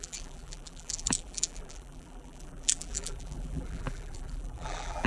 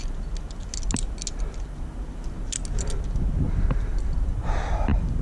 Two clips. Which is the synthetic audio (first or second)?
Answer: first